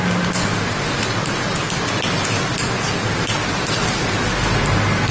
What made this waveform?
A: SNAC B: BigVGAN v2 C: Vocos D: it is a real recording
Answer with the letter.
D